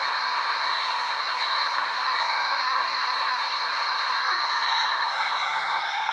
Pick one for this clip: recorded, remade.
remade